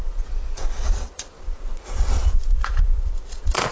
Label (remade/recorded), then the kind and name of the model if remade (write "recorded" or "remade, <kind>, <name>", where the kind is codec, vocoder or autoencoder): remade, vocoder, Vocos